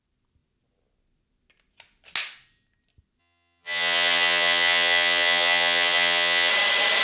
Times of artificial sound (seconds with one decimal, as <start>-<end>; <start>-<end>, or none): 3.2-6.5